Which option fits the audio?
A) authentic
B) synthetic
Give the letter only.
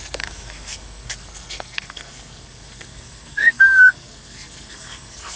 B